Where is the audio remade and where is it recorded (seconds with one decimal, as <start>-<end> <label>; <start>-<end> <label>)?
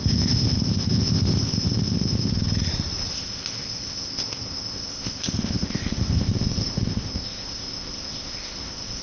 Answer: 0.0-2.3 remade; 2.3-3.1 recorded; 3.1-9.0 remade